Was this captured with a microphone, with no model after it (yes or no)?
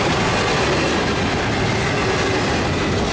yes